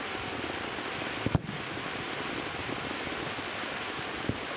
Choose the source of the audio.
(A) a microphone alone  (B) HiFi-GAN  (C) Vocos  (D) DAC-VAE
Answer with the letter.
A